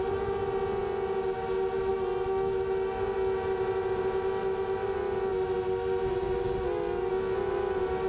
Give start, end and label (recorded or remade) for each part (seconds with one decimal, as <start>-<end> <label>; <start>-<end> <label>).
0.0-8.1 recorded

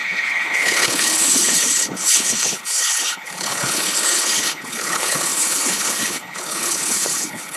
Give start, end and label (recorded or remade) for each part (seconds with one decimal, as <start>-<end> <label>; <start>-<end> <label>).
0.0-7.6 remade

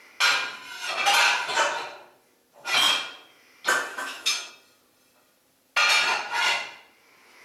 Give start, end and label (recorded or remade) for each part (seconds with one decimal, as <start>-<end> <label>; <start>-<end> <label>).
0.0-3.9 recorded; 3.9-4.5 remade; 4.5-7.4 recorded